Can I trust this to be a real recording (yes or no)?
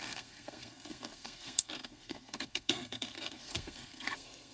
no